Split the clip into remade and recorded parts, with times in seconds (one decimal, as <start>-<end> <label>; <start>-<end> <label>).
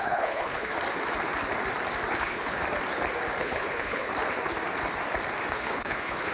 0.0-0.7 remade; 0.7-2.1 recorded; 2.1-2.6 remade; 2.6-3.4 recorded; 3.4-4.1 remade; 4.1-5.5 recorded; 5.5-6.3 remade